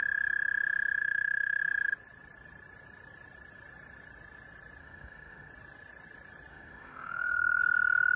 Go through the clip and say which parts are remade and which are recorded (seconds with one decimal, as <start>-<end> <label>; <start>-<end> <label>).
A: 0.0-1.0 recorded; 1.0-1.6 remade; 1.6-4.8 recorded; 4.8-5.5 remade; 5.5-6.5 recorded; 6.5-7.6 remade; 7.6-8.2 recorded

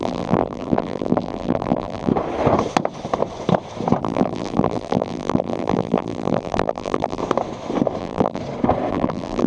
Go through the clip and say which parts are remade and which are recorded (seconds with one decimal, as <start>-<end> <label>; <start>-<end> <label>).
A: 0.0-2.1 remade; 2.1-4.0 recorded; 4.0-7.2 remade; 7.2-8.0 recorded; 8.0-8.4 remade; 8.4-8.9 recorded; 8.9-9.5 remade

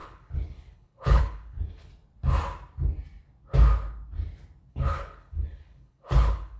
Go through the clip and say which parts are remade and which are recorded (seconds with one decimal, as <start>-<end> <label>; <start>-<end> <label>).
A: 0.0-1.9 remade; 1.9-4.7 recorded; 4.7-6.6 remade

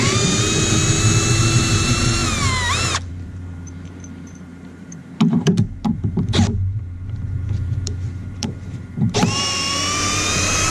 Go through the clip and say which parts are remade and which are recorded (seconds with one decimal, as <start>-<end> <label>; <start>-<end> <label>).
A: 0.0-0.8 remade; 0.8-1.4 recorded; 1.4-2.2 remade; 2.2-3.1 recorded; 3.1-10.7 remade

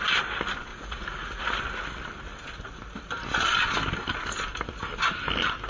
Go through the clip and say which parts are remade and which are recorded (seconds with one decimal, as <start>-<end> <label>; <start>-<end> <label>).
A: 0.0-0.7 recorded; 0.7-1.4 remade; 1.4-5.7 recorded

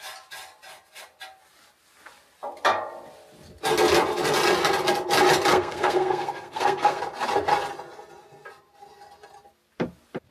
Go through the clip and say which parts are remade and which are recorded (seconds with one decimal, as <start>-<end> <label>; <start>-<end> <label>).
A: 0.0-5.5 recorded; 5.5-7.0 remade; 7.0-10.3 recorded

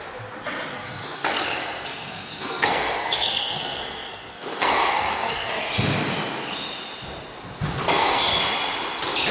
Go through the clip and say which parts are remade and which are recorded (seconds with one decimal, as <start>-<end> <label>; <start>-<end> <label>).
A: 0.0-0.7 recorded; 0.7-5.5 remade; 5.5-7.8 recorded; 7.8-8.4 remade; 8.4-9.3 recorded